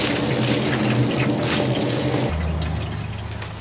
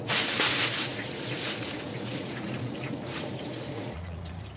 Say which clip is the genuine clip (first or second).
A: first